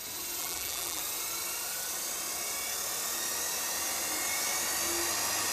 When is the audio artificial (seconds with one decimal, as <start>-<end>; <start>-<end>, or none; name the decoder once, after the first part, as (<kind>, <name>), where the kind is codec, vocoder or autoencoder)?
0.4-1.0 (vocoder, BigVGAN v2)